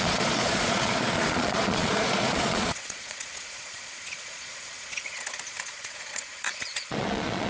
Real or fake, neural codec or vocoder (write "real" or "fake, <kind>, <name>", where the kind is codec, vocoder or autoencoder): fake, vocoder, Vocos